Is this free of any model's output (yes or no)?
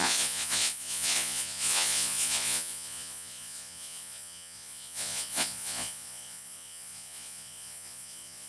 no